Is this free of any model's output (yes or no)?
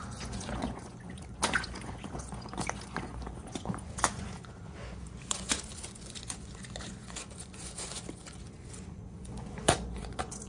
no